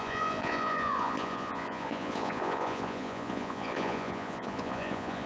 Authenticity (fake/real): fake